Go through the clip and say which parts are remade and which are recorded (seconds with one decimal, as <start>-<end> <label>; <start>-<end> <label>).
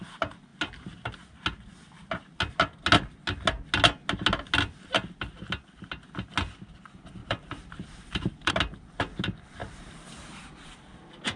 0.0-7.2 recorded; 7.2-8.5 remade; 8.5-9.6 recorded; 9.6-10.5 remade; 10.5-11.4 recorded